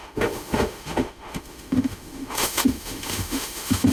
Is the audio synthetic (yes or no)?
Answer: yes